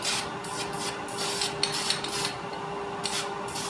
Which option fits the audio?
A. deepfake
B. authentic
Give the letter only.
B